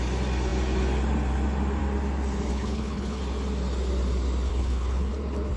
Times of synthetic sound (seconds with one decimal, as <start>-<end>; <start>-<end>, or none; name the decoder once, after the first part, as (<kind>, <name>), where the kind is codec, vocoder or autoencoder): 2.5-3.2 (codec, HILCodec); 4.5-5.1